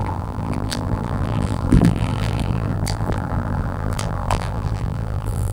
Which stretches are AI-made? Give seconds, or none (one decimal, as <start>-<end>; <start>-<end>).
0.0-5.5